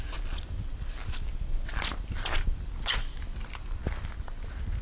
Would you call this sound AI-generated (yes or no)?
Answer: no